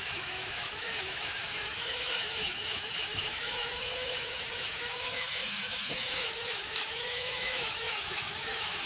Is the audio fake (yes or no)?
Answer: yes